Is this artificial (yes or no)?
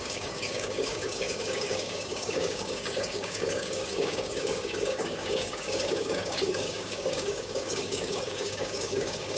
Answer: yes